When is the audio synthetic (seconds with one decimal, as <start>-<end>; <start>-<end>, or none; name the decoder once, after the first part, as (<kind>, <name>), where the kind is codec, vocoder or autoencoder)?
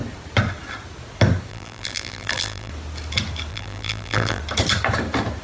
1.5-2.7 (vocoder, BigVGAN v2); 3.5-4.4